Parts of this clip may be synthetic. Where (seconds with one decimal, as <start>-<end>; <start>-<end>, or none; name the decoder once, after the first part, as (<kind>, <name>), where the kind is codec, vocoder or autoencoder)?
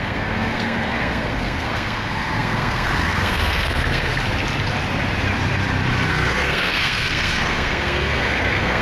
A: 0.0-4.1 (codec, SNAC); 6.1-8.8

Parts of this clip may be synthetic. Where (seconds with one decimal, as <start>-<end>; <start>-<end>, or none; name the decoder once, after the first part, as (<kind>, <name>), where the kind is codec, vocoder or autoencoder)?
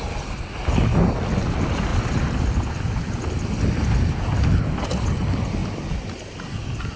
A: 1.9-3.5 (vocoder, BigVGAN v2)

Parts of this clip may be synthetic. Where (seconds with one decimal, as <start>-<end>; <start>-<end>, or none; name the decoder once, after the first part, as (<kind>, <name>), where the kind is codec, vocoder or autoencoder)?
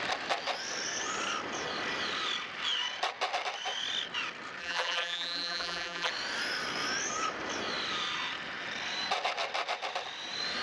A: 4.6-6.1 (vocoder, BigVGAN v2)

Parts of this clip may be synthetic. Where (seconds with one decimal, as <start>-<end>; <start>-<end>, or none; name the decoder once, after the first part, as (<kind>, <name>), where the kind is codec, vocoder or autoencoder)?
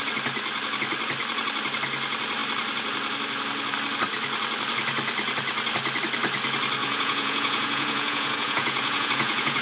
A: 6.8-9.6 (vocoder, Vocos)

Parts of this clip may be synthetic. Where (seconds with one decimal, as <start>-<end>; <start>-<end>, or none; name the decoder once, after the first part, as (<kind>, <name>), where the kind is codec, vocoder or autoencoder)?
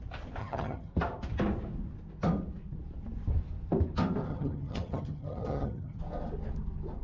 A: 0.4-0.9 (vocoder, HiFi-GAN); 4.3-6.0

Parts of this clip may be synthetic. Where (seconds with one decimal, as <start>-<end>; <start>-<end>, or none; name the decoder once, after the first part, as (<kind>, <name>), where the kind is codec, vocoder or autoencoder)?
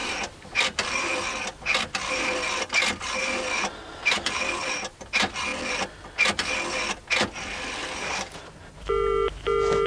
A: 0.0-0.6 (vocoder, BigVGAN v2); 7.8-8.5